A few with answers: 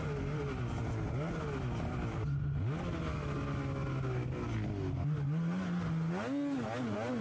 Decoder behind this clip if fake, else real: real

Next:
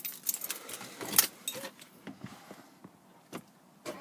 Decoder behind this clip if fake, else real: real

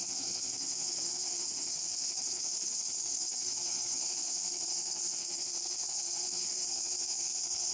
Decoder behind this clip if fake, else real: fake, codec, SNAC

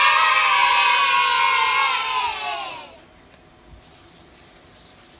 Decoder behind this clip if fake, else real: real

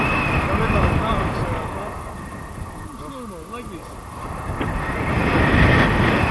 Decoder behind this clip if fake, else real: real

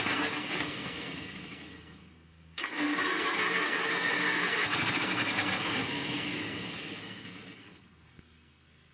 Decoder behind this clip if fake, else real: fake, codec, SNAC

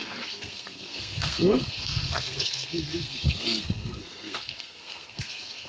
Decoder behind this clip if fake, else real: fake, codec, SNAC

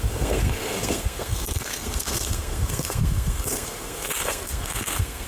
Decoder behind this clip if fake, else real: fake, codec, SNAC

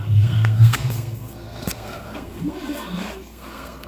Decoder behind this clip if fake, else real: fake, codec, SNAC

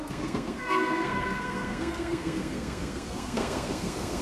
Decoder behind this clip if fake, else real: fake, codec, SNAC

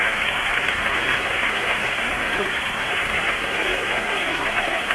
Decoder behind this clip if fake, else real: fake, codec, SNAC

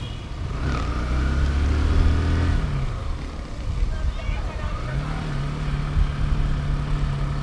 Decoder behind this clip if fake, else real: real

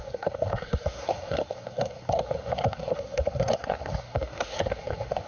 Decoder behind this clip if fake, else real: fake, codec, SNAC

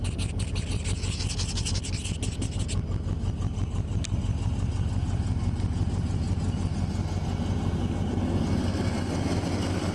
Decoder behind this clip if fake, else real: real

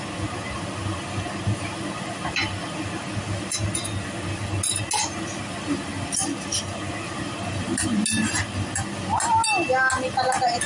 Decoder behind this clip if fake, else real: real